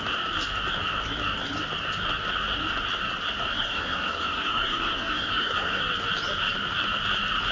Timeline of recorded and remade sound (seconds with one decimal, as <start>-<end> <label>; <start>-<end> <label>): 0.0-3.5 recorded; 3.5-5.8 remade; 5.8-7.5 recorded